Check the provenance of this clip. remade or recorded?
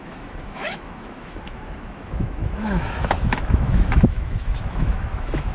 remade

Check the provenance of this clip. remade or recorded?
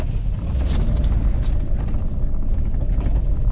recorded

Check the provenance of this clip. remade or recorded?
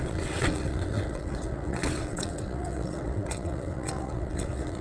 remade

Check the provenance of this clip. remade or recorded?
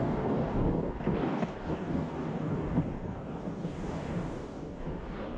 remade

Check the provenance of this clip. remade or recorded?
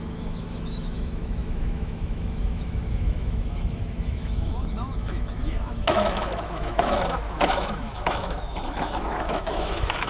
remade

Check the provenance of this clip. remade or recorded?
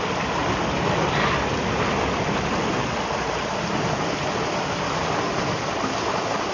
recorded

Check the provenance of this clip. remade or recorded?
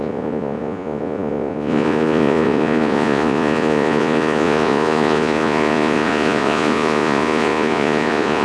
remade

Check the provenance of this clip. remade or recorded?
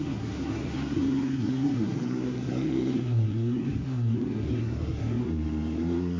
remade